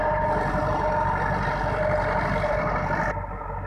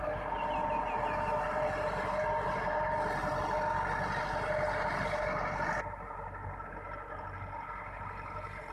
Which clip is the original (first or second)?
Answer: second